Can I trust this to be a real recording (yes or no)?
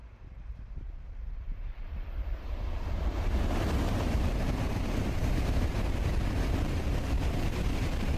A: no